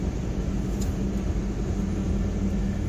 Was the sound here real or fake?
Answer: real